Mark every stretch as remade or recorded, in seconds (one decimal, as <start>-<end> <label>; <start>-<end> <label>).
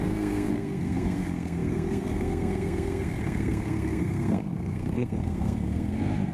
0.0-6.3 remade